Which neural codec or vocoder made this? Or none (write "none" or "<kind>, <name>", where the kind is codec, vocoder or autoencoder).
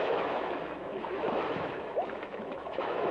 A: autoencoder, DAC-VAE